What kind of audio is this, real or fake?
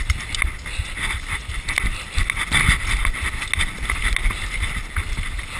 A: real